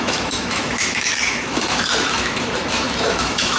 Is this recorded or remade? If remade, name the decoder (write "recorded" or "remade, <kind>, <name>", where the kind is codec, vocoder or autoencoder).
remade, autoencoder, DAC-VAE